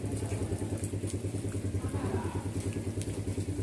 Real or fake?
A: real